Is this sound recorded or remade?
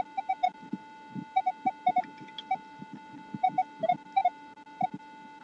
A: recorded